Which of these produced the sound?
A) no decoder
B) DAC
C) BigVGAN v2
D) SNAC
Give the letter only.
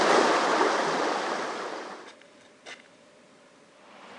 A